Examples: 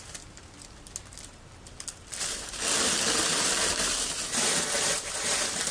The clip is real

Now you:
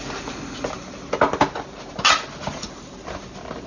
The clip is real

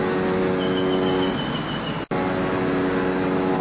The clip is real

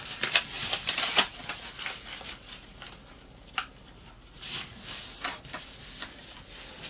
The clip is real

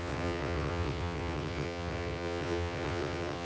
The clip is fake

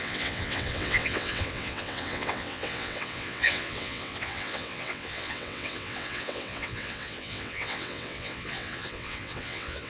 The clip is fake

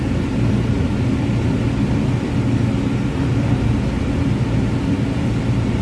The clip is real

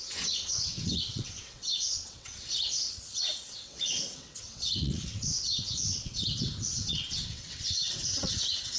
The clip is fake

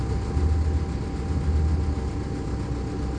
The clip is real